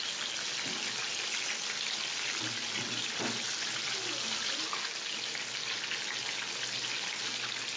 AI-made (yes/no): no